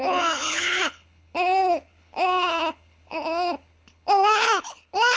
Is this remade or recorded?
remade